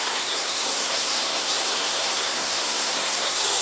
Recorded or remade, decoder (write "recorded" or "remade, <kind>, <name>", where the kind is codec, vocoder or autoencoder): remade, codec, SNAC